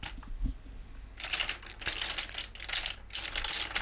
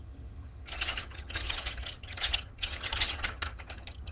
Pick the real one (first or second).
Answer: first